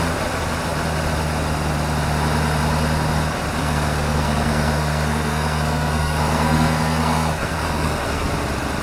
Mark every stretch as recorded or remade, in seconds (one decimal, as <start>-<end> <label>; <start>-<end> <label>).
0.0-3.6 recorded; 3.6-8.3 remade; 8.3-8.8 recorded